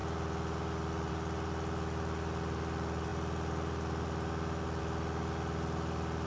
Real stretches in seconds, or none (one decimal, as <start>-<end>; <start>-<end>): 0.0-6.3